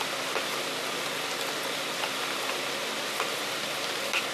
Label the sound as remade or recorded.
recorded